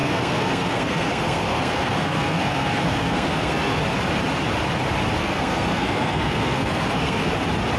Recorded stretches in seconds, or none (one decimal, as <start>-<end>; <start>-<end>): 3.8-5.2; 7.3-7.8